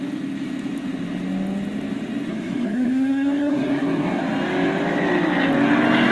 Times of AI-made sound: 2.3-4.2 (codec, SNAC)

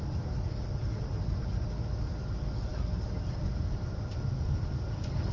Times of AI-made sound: none

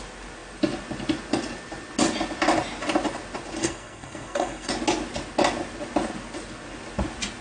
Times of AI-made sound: 3.6-4.7 (codec, SNAC)

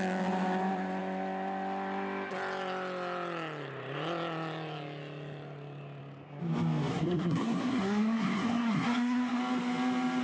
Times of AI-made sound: 6.9-9.4 (codec, SNAC)